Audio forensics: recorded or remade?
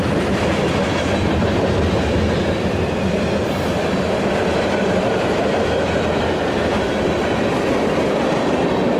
remade